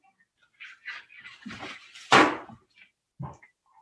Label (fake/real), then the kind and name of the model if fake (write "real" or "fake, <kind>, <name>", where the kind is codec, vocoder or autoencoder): real